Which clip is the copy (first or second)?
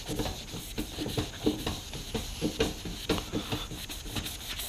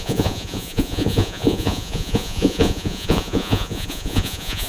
second